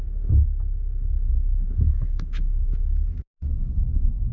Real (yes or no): yes